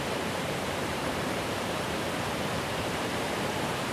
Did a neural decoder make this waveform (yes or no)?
yes